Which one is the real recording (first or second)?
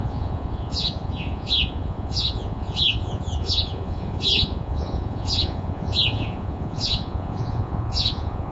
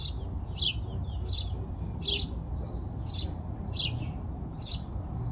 second